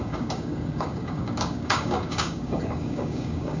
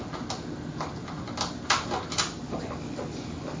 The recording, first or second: second